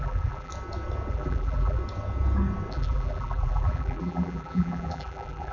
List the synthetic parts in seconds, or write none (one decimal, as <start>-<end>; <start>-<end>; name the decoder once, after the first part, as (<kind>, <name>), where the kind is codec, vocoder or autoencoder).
0.0-0.5 (vocoder, BigVGAN v2); 1.1-1.8; 2.7-5.5

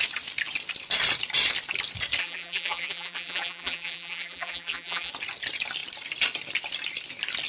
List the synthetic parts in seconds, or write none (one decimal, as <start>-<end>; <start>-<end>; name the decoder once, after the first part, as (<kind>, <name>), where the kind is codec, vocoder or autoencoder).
2.2-5.1 (vocoder, BigVGAN v2)

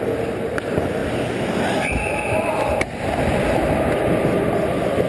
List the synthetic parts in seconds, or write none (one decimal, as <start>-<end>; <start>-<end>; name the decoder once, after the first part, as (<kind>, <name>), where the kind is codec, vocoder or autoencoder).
0.0-1.0 (vocoder, BigVGAN v2); 3.7-5.1

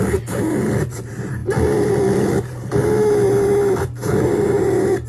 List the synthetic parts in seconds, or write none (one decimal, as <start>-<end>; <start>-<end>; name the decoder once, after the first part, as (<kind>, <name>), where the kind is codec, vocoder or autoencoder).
0.0-5.1 (vocoder, BigVGAN v2)

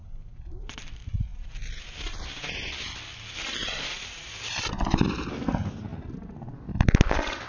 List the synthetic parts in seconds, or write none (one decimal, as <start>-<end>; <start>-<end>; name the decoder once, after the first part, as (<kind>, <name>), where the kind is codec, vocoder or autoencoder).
0.0-0.9 (vocoder, BigVGAN v2); 3.6-4.8

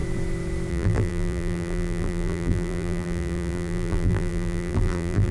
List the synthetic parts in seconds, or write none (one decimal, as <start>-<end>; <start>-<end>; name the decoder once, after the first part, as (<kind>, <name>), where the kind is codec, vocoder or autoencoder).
0.7-5.3 (vocoder, BigVGAN v2)